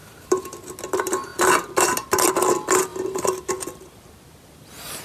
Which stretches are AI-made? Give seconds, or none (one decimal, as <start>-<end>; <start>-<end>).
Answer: 0.0-0.7; 2.9-3.5